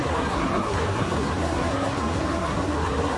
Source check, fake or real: fake